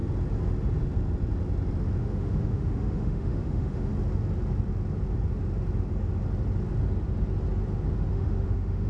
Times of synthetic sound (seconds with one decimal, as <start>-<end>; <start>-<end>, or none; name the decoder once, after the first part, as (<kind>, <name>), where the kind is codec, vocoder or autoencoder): 2.0-3.9 (autoencoder, DAC-VAE); 8.1-8.9

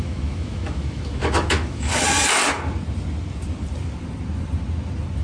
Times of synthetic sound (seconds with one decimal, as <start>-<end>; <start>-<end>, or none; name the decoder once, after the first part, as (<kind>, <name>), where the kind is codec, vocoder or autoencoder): 0.0-1.9 (autoencoder, DAC-VAE)

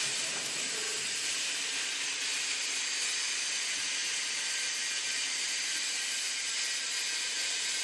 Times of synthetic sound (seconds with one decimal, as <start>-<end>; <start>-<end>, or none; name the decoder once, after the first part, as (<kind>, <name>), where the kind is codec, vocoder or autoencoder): none

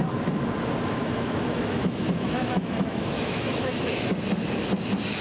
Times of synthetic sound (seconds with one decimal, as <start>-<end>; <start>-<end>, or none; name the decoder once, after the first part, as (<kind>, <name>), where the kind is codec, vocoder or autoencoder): 1.0-4.1 (autoencoder, DAC-VAE)

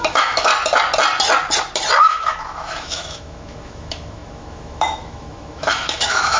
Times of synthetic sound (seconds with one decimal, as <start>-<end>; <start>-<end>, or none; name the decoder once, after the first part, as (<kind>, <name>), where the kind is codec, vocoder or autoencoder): 0.0-0.5 (autoencoder, DAC-VAE); 2.0-6.4